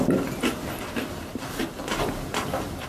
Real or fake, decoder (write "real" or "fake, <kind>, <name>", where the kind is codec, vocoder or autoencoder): real